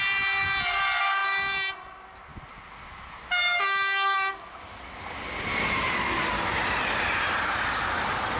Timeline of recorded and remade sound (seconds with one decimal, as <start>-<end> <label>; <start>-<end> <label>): 0.0-8.4 recorded